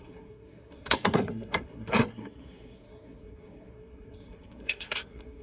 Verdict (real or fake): fake